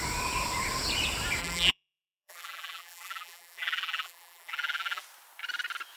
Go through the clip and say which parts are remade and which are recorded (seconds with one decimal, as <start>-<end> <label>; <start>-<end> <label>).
0.0-1.4 recorded; 1.4-5.0 remade; 5.0-6.0 recorded